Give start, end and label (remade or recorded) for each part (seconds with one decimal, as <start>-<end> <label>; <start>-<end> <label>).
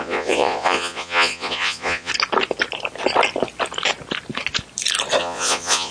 0.0-2.1 remade; 2.1-5.2 recorded; 5.2-5.9 remade